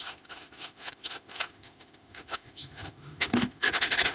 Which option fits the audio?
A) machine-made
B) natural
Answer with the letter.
A